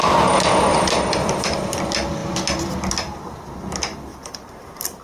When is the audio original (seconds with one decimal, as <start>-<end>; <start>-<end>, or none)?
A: 0.0-0.7; 1.8-4.1